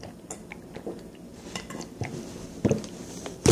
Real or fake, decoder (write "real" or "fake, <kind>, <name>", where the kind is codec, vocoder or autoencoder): fake, vocoder, BigVGAN v2